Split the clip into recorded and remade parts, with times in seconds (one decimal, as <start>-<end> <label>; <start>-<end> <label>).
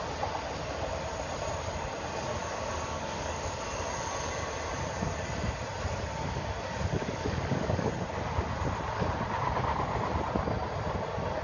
0.0-2.4 recorded; 2.4-3.6 remade; 3.6-6.9 recorded; 6.9-7.9 remade; 7.9-11.4 recorded